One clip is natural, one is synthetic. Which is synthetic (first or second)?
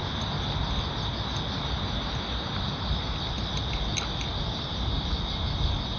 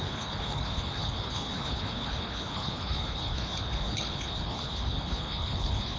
second